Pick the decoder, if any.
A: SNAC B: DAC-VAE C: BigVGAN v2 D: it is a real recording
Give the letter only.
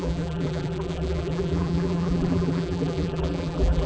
C